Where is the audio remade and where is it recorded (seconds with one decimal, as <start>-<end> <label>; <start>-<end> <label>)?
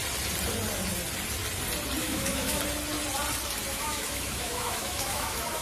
0.0-2.0 recorded; 2.0-2.6 remade; 2.6-3.7 recorded; 3.7-5.6 remade